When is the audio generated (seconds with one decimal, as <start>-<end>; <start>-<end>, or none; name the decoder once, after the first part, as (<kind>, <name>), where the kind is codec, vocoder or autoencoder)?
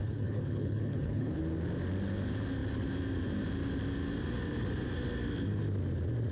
0.0-1.4 (codec, HILCodec)